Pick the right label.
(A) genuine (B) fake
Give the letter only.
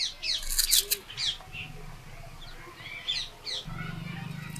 A